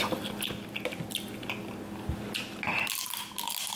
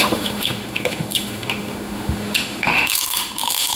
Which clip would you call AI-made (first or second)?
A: second